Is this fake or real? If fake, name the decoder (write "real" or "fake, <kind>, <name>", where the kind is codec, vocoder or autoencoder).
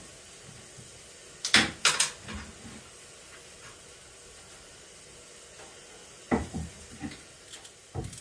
real